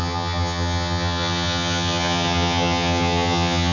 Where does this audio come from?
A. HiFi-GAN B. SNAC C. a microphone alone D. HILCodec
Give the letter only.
A